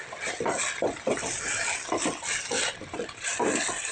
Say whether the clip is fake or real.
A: real